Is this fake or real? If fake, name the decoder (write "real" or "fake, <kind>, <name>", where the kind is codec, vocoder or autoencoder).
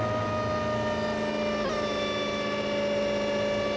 real